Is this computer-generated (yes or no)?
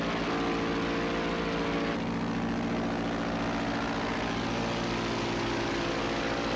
no